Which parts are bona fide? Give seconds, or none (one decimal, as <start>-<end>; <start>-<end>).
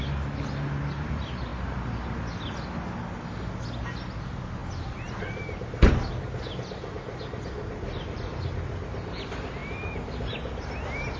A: 0.0-4.6; 6.2-9.6